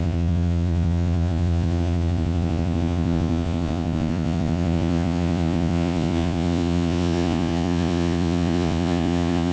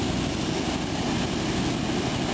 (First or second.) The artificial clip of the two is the first